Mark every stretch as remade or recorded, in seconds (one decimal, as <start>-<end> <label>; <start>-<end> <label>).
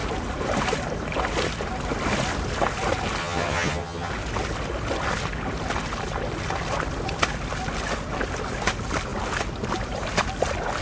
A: 0.0-3.2 recorded; 3.2-4.1 remade; 4.1-10.8 recorded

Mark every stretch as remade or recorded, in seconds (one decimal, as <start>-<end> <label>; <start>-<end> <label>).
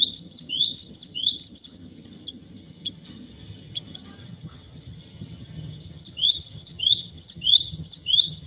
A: 0.0-8.5 remade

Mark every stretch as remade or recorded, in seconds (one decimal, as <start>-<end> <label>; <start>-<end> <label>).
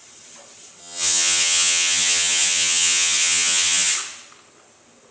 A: 0.0-0.8 recorded; 0.8-3.9 remade; 3.9-5.1 recorded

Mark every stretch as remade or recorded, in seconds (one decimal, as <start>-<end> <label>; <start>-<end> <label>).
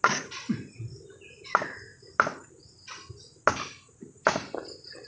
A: 0.0-5.1 recorded